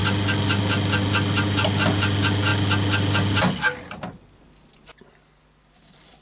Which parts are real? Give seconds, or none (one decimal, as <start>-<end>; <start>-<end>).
0.0-6.2